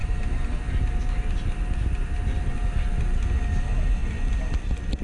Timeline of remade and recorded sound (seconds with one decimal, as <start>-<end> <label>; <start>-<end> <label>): 0.0-5.0 recorded